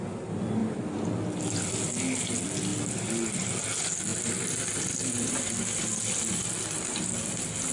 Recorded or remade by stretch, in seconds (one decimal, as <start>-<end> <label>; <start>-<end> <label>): 0.0-7.7 recorded

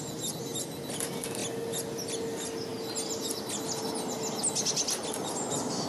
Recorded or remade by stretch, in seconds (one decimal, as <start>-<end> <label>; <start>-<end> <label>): 0.0-5.9 recorded